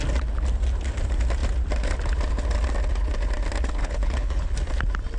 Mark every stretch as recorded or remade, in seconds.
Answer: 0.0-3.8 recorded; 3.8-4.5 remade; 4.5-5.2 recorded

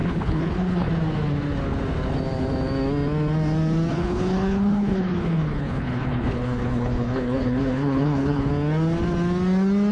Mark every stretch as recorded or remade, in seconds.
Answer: 0.0-0.9 remade; 0.9-3.9 recorded; 3.9-8.5 remade; 8.5-9.9 recorded

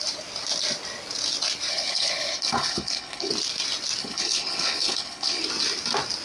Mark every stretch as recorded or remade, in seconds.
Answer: 0.0-1.7 recorded; 1.7-3.3 remade; 3.3-4.0 recorded; 4.0-5.4 remade; 5.4-6.2 recorded

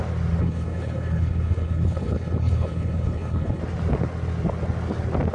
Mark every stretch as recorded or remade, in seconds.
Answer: 0.0-0.4 recorded; 0.4-3.6 remade; 3.6-5.3 recorded

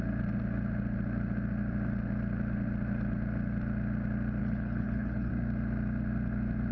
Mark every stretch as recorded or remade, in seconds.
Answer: 0.0-4.4 recorded; 4.4-5.3 remade; 5.3-6.7 recorded

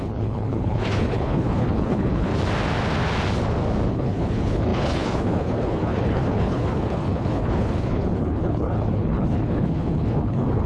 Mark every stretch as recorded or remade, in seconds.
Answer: 0.0-2.3 remade; 2.3-3.9 recorded; 3.9-10.7 remade

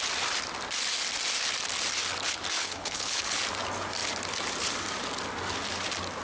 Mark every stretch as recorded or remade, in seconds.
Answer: 0.0-2.6 recorded; 2.6-3.4 remade; 3.4-6.2 recorded